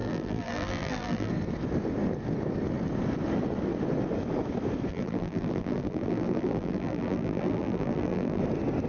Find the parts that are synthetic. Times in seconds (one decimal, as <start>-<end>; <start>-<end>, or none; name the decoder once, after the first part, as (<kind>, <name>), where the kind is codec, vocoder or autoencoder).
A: 0.0-1.3 (vocoder, BigVGAN v2); 4.9-8.4